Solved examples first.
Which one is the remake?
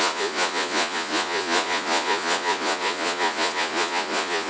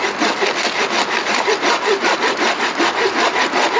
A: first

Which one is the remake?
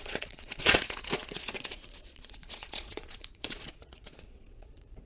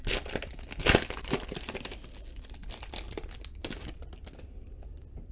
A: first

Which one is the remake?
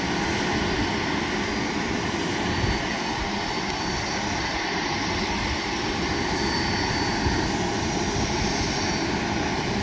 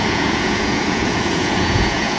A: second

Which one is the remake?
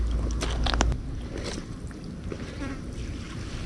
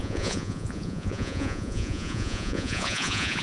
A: second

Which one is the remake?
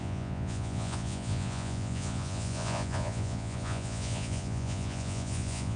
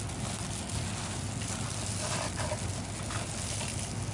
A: first